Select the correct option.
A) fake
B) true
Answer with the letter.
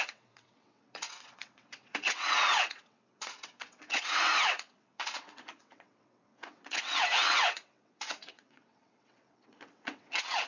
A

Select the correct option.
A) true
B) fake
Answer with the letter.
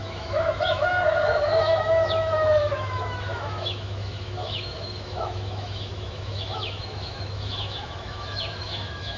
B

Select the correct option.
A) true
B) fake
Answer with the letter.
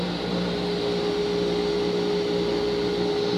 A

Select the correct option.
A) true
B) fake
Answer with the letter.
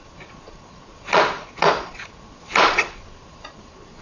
B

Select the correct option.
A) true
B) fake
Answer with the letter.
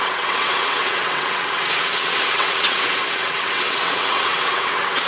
B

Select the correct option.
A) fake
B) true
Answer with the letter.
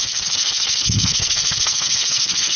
A